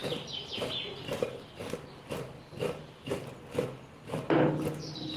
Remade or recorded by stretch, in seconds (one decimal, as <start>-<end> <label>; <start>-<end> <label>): 0.0-5.2 recorded